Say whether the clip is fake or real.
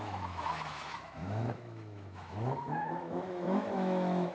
fake